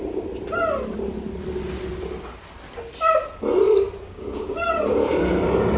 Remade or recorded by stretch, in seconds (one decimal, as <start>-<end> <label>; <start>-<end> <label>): 0.0-4.0 recorded; 4.0-4.8 remade; 4.8-5.8 recorded